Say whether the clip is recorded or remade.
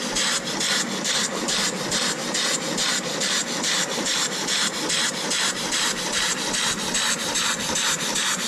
remade